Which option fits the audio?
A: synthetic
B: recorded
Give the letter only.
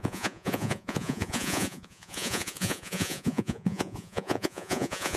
A